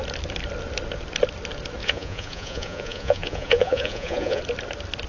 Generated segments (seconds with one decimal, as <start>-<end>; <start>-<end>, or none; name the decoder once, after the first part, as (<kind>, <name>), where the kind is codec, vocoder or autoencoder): 1.8-4.4 (vocoder, Vocos)